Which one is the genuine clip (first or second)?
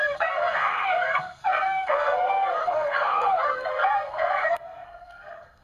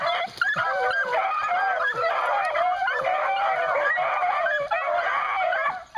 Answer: second